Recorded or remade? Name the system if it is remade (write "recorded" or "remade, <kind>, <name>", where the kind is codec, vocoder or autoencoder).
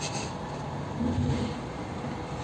recorded